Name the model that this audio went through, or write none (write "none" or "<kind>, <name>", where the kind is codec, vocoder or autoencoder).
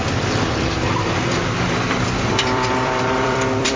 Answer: vocoder, BigVGAN v2